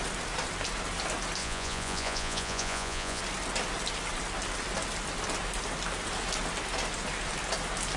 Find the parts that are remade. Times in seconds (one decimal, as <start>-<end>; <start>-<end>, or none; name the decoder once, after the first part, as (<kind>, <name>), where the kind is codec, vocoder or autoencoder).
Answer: 1.4-3.2 (vocoder, Vocos)

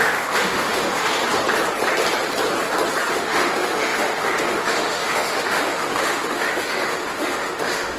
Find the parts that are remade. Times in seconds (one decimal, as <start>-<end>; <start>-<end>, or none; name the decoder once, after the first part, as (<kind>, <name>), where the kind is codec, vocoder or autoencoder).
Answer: 0.0-1.2 (autoencoder, DAC-VAE); 3.1-8.0

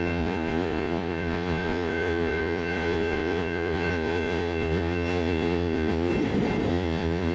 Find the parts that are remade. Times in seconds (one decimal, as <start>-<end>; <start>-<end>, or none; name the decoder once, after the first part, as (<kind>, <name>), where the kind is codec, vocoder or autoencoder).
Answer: 0.0-6.1 (vocoder, Vocos); 6.7-7.3

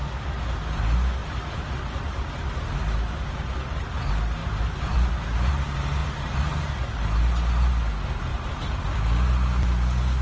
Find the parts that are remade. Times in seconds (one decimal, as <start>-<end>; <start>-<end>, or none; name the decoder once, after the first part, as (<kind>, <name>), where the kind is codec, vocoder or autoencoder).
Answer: 1.2-2.7 (vocoder, BigVGAN v2); 4.4-5.5; 6.0-6.6

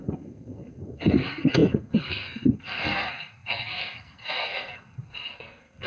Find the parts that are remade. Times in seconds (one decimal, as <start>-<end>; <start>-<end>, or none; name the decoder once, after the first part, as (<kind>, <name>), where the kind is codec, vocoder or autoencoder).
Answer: 0.0-5.9 (codec, SNAC)